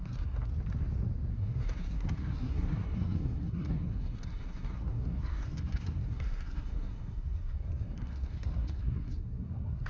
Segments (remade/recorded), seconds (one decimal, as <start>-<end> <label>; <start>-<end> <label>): 0.0-0.5 remade; 0.5-1.3 recorded; 1.3-9.9 remade